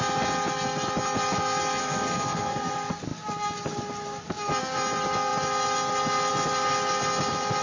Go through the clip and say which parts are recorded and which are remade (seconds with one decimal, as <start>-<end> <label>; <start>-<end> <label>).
0.0-1.8 recorded; 1.8-2.7 remade; 2.7-7.6 recorded